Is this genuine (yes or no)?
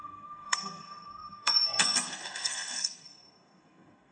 no